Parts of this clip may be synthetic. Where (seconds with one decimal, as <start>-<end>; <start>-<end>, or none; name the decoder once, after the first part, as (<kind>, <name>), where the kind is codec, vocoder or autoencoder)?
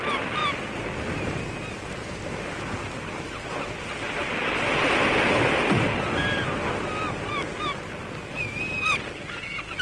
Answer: none